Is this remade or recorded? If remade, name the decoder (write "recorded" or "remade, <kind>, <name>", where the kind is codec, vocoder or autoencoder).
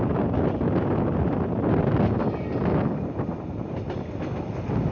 recorded